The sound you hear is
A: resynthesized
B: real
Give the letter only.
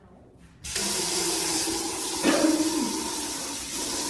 B